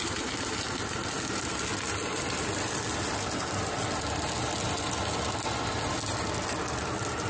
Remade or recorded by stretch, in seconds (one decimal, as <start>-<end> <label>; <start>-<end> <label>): 0.0-7.3 recorded